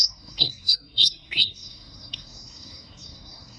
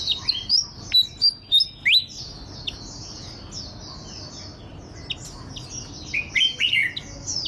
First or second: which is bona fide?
second